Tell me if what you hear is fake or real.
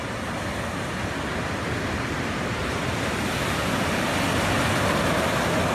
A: real